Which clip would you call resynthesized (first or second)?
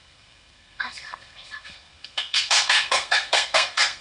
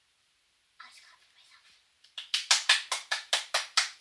first